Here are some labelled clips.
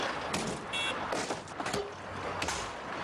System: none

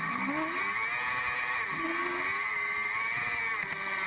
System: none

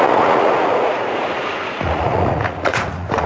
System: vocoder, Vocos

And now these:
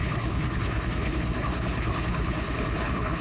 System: codec, HILCodec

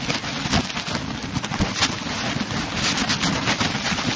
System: none